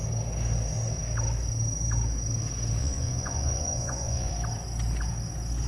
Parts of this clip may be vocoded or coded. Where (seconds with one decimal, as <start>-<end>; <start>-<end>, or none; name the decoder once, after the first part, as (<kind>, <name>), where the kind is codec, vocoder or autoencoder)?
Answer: 2.8-4.3 (vocoder, Vocos)